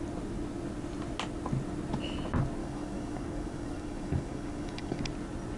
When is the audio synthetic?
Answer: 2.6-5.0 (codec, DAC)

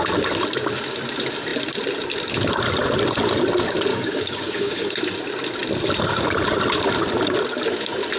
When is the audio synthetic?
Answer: 3.9-5.0 (codec, DAC)

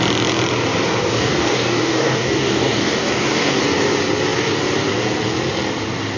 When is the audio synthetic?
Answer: 1.0-3.6 (codec, DAC)

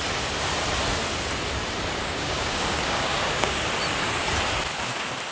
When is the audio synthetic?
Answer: 2.0-3.6 (codec, DAC)

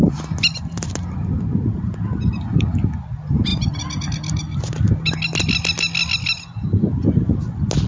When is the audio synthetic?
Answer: none

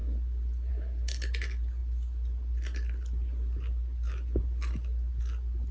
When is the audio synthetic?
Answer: none

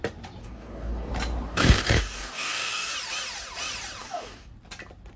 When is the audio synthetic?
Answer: 0.4-1.1 (codec, DAC); 1.5-2.9; 4.0-4.5